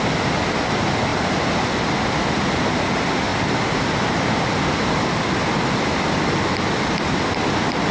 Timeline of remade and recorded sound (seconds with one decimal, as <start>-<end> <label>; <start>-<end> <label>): 0.0-1.1 recorded; 1.1-2.0 remade; 2.0-7.9 recorded